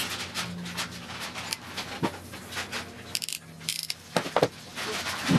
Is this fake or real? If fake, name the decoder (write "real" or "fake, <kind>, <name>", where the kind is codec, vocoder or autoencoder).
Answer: real